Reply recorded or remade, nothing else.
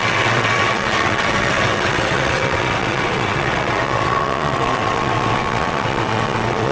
remade